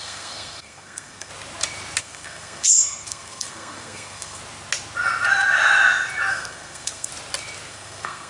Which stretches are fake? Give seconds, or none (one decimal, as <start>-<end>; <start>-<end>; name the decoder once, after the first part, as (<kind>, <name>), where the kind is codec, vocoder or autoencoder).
0.0-1.3 (codec, SNAC); 2.0-4.4; 6.3-7.1; 7.7-8.3